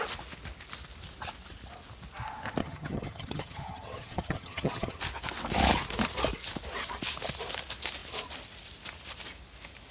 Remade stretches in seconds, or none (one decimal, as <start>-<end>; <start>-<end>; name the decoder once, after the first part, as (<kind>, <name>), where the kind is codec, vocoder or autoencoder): 2.6-5.0 (vocoder, HiFi-GAN)